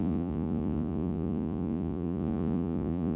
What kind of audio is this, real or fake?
fake